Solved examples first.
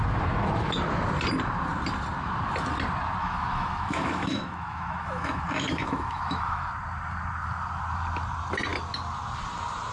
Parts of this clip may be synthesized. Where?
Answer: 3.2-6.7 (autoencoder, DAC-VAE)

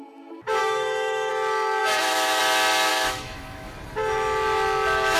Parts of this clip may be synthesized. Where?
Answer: 0.6-1.3 (autoencoder, DAC-VAE); 1.8-2.4; 2.9-3.7

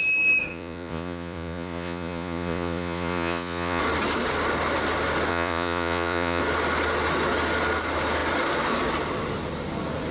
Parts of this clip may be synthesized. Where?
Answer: 0.5-3.8 (vocoder, Vocos); 5.3-6.4

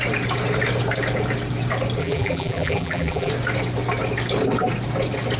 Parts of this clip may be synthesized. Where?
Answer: 2.0-3.3 (vocoder, BigVGAN v2)

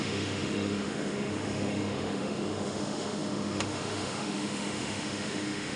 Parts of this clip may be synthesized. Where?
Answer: 0.0-5.8 (autoencoder, DAC-VAE)

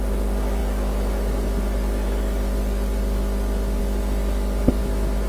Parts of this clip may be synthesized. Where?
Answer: 4.8-5.3 (autoencoder, DAC-VAE)

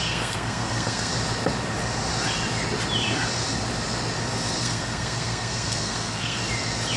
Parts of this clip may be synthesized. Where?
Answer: 0.0-1.1 (codec, SNAC); 4.6-6.4

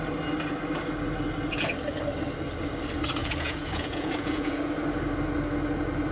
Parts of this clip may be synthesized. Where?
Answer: 3.2-4.6 (vocoder, Vocos)